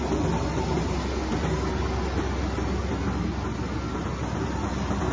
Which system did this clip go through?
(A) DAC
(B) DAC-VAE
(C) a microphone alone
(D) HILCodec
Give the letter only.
C